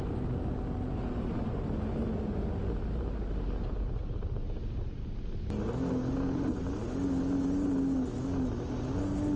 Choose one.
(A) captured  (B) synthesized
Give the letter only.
A